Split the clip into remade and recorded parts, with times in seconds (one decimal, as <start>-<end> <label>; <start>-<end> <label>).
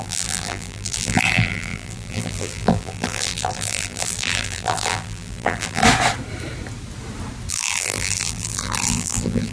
0.0-5.8 remade; 5.8-7.5 recorded; 7.5-9.5 remade